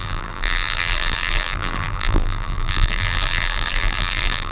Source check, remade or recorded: remade